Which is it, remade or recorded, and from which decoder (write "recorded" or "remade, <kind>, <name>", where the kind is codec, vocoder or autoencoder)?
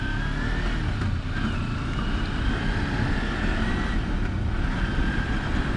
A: recorded